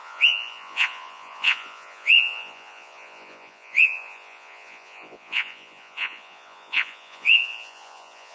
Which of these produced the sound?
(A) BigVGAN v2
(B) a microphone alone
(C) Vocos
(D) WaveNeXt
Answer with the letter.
C